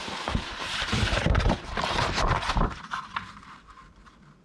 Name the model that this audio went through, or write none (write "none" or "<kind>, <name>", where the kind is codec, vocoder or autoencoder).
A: vocoder, BigVGAN v2